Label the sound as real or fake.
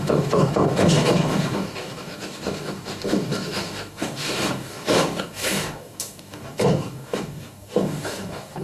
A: fake